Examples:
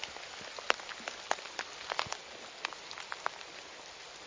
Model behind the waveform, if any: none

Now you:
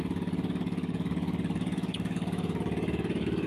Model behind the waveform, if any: codec, DAC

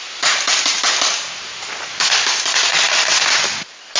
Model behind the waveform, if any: none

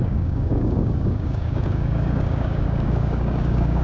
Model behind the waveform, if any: codec, DAC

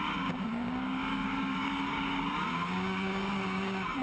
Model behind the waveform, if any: codec, DAC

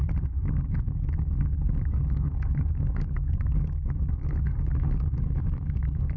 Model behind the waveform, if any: codec, DAC